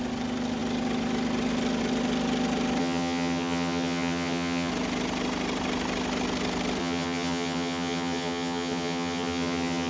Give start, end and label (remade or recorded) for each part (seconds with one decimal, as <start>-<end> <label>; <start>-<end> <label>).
0.0-2.8 recorded; 2.8-4.7 remade; 4.7-6.8 recorded; 6.8-9.9 remade